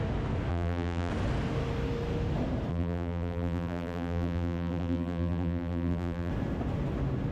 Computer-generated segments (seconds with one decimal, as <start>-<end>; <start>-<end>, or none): 0.5-1.1; 2.7-6.3